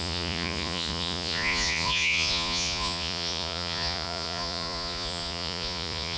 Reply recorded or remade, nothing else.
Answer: remade